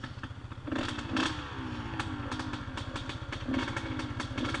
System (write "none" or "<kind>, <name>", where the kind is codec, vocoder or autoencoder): none